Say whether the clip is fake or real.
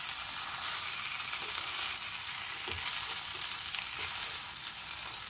real